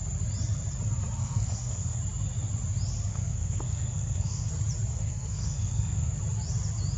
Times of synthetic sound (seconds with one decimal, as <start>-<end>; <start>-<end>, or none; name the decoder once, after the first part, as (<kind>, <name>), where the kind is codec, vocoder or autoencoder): 1.2-2.0 (codec, SNAC); 3.1-4.5; 4.9-6.2